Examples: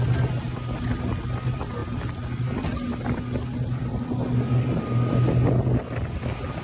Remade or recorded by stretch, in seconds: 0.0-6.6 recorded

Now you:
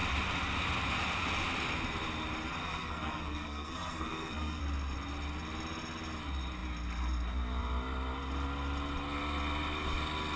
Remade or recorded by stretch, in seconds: 0.0-2.6 recorded; 2.6-4.6 remade; 4.6-10.4 recorded

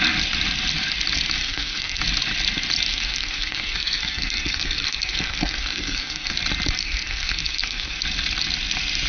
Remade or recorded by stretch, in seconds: 0.0-1.4 recorded; 1.4-2.0 remade; 2.0-2.9 recorded; 2.9-6.3 remade; 6.3-6.8 recorded; 6.8-8.0 remade; 8.0-9.1 recorded

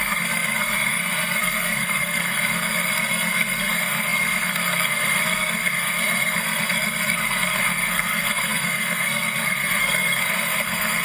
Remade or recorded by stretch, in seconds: 0.0-11.0 remade

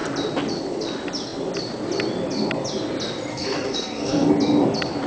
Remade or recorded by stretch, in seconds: 0.0-3.3 recorded; 3.3-4.3 remade; 4.3-5.1 recorded